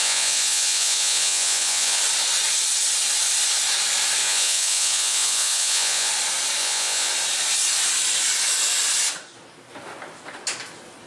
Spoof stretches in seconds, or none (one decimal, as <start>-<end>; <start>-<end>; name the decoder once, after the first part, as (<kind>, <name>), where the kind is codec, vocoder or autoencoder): 0.0-2.0 (vocoder, Vocos); 4.2-6.1; 6.6-7.1